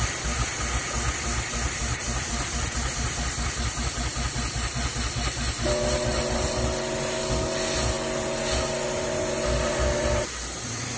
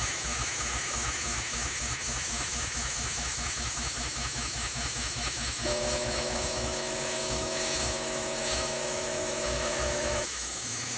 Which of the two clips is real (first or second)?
first